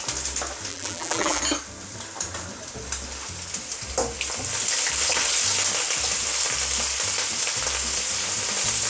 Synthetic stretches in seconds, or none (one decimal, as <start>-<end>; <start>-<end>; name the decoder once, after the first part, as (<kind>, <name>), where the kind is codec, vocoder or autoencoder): 0.7-1.4 (vocoder, BigVGAN v2)